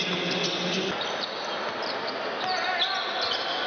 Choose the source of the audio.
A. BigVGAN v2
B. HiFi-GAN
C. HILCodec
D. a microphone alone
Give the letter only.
D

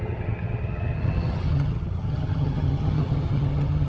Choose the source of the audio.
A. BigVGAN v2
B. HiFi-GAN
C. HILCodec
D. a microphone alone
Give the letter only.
B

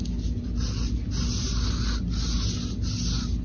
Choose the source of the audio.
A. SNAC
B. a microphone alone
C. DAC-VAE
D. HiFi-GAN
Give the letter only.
B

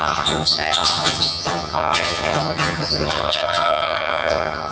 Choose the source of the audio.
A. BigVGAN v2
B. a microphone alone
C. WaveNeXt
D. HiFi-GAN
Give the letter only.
D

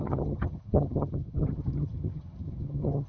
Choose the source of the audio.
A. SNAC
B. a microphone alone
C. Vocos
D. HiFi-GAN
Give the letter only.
D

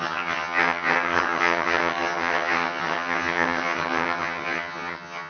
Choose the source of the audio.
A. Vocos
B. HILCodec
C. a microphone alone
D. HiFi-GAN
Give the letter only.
D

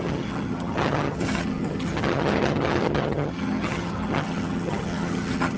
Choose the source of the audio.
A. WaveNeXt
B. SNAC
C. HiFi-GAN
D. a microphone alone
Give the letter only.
C